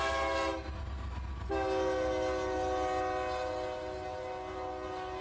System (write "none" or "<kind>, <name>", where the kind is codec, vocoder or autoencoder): none